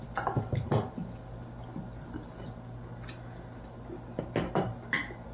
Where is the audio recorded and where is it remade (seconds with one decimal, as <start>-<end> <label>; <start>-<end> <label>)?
0.0-5.3 recorded